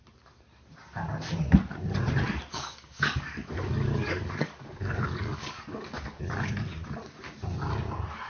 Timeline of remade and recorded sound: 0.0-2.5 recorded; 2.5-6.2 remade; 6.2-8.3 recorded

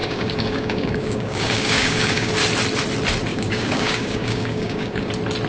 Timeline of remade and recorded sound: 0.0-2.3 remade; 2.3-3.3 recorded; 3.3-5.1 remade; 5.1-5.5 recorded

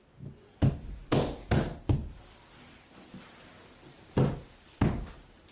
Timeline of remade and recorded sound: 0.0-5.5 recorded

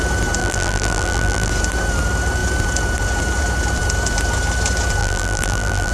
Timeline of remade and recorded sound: 0.0-0.4 recorded; 0.4-1.5 remade; 1.5-5.0 recorded; 5.0-5.9 remade

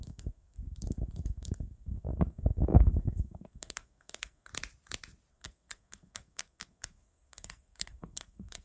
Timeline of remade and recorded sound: 0.0-4.5 remade; 4.5-5.3 recorded; 5.3-8.6 remade

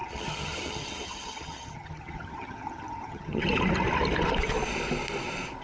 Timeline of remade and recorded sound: 0.0-3.4 remade; 3.4-5.6 recorded

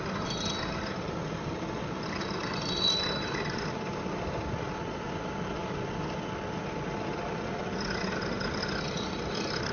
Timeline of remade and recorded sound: 0.0-9.7 recorded